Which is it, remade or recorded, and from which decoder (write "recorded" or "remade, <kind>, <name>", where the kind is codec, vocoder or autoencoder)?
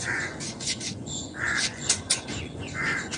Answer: remade, vocoder, Vocos